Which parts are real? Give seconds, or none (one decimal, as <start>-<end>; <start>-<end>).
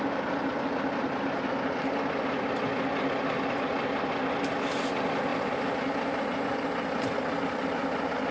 0.0-8.3